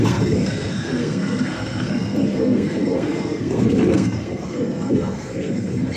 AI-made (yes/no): yes